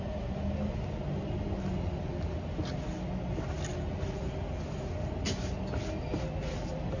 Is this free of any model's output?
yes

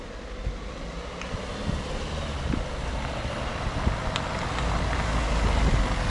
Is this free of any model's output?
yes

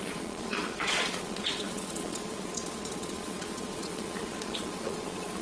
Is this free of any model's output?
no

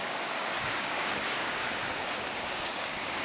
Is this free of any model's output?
no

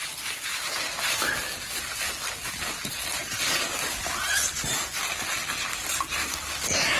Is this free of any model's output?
yes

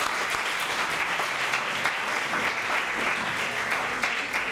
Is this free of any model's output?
yes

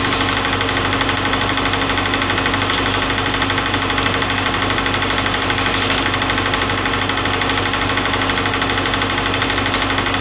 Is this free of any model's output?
yes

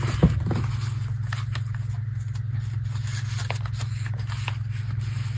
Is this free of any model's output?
yes